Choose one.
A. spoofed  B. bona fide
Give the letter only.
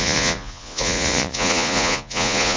A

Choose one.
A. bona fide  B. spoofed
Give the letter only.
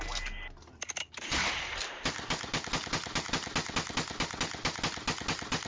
A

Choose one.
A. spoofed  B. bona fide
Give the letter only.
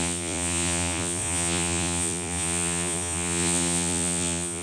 A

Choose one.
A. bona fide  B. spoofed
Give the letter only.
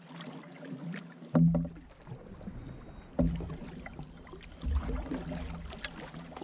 A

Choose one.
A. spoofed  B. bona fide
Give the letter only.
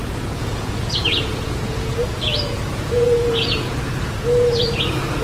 A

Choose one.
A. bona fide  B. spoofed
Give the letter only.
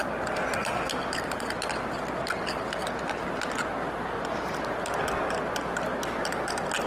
A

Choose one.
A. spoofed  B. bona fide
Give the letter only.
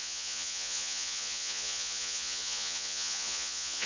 A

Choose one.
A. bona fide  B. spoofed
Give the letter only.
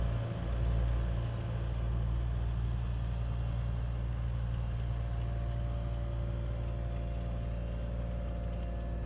A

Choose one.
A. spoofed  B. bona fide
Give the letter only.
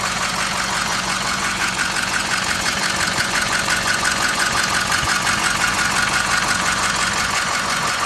A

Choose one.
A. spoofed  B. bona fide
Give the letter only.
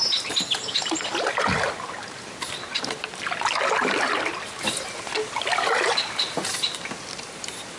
B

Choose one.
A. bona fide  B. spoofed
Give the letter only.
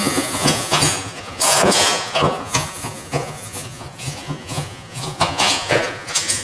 B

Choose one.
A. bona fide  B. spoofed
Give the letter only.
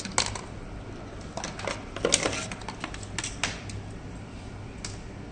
A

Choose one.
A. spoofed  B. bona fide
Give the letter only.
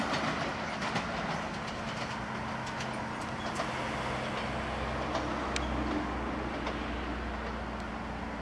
B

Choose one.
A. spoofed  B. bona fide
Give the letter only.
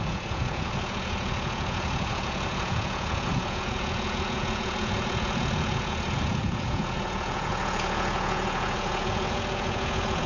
A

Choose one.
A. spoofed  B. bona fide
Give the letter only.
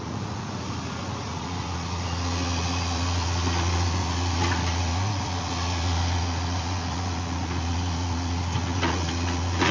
A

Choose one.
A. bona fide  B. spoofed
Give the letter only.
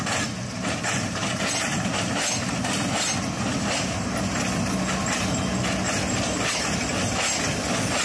A